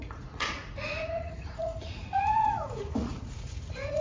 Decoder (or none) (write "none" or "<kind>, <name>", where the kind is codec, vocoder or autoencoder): vocoder, Vocos